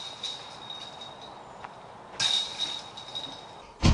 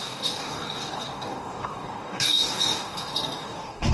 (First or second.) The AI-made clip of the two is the second